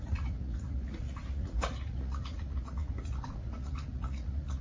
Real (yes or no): no